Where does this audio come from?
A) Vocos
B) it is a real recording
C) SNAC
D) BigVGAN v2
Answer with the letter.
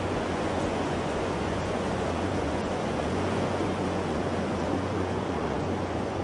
A